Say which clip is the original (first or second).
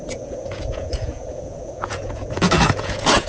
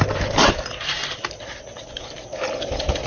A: second